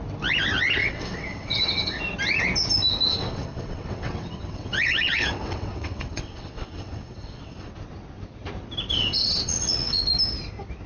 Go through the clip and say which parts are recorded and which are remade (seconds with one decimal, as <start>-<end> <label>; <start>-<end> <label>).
0.0-0.8 recorded; 0.8-2.0 remade; 2.0-3.1 recorded; 3.1-7.7 remade; 7.7-8.9 recorded; 8.9-10.0 remade; 10.0-10.9 recorded